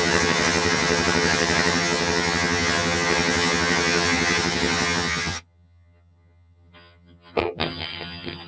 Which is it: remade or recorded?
remade